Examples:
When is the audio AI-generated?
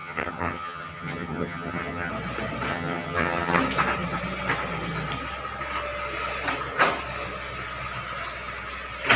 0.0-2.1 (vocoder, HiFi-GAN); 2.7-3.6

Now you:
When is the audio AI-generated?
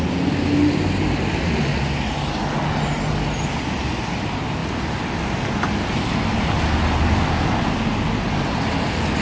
none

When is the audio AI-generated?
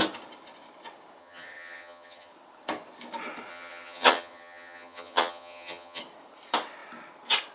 1.2-2.3 (vocoder, HiFi-GAN); 3.5-6.0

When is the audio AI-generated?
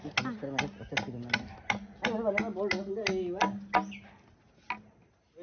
none